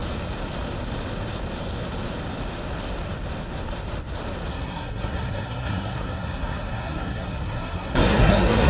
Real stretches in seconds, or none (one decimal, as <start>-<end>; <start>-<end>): 0.0-4.5

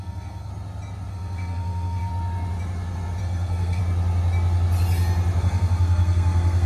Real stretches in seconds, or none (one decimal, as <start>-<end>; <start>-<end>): 0.5-1.1; 2.1-3.2; 3.8-5.4

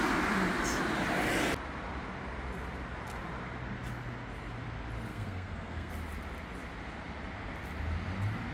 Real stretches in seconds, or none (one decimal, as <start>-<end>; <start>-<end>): 0.0-5.1; 5.9-8.5

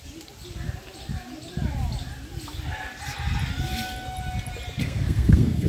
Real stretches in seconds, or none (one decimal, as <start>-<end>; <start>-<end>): 0.0-4.8

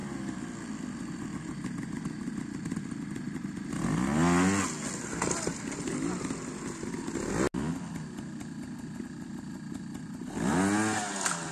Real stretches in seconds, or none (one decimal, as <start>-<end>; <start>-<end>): 0.0-11.5